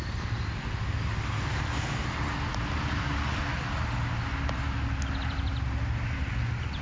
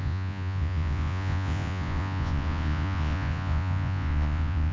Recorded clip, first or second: first